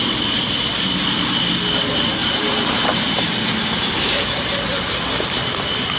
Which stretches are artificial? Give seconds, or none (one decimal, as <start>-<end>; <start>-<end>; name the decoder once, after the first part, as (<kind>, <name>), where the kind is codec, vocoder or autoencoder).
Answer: 2.2-4.8 (vocoder, BigVGAN v2)